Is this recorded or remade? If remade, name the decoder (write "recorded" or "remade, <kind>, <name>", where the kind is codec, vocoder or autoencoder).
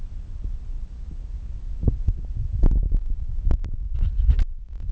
recorded